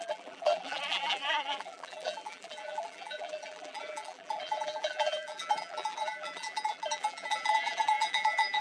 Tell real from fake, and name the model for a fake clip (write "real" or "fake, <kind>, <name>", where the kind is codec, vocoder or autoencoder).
fake, vocoder, BigVGAN v2